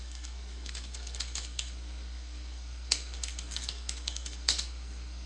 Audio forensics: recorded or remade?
remade